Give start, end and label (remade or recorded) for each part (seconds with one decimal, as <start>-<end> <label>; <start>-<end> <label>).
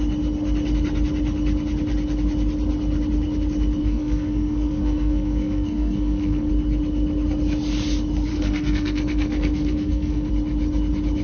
0.0-3.8 recorded; 3.8-6.5 remade; 6.5-8.3 recorded; 8.3-10.3 remade; 10.3-11.2 recorded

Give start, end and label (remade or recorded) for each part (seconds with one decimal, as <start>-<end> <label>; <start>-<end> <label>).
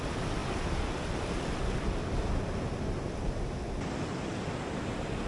0.0-5.3 recorded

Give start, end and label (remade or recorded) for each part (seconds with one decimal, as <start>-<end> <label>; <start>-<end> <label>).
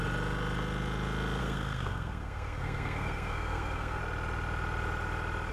0.0-1.4 recorded; 1.4-4.0 remade; 4.0-5.5 recorded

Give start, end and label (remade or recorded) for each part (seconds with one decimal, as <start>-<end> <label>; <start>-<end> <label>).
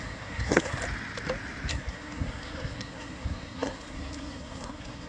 0.0-0.8 remade; 0.8-1.7 recorded; 1.7-5.1 remade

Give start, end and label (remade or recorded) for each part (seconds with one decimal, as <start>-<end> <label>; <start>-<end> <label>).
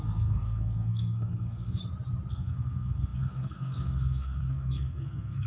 0.0-1.8 remade; 1.8-2.3 recorded; 2.3-5.5 remade